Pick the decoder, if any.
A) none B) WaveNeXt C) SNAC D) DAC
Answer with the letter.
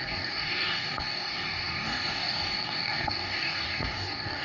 D